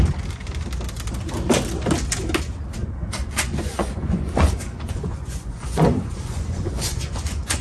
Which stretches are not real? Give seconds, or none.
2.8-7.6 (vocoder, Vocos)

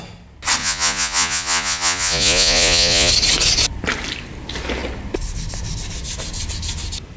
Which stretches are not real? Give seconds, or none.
0.6-3.1 (vocoder, Vocos)

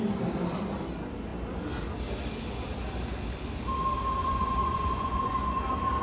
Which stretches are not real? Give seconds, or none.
4.2-5.5 (vocoder, Vocos)